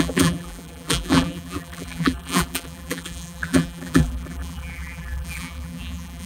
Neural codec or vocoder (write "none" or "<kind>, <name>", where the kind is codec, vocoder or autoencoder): vocoder, BigVGAN v2